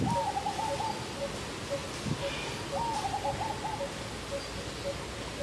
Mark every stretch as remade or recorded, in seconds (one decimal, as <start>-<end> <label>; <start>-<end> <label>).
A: 0.0-5.4 recorded